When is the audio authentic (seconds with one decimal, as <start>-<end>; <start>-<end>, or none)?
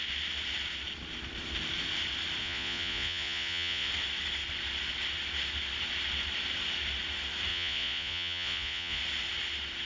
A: 0.0-2.4; 3.9-7.5; 9.0-9.9